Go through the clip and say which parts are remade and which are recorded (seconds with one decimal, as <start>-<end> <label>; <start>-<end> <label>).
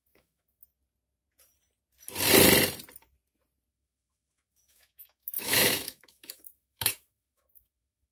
0.0-0.6 remade; 0.6-3.7 recorded; 3.7-8.1 remade